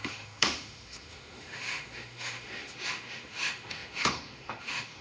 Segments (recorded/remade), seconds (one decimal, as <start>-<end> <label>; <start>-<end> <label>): 0.0-5.0 remade